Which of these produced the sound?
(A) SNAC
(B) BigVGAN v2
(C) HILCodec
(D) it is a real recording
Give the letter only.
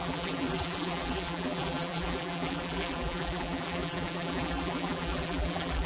B